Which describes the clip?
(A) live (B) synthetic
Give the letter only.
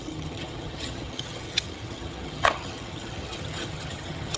B